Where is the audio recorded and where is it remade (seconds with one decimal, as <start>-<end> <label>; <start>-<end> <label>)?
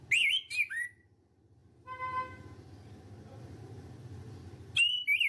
0.0-5.3 recorded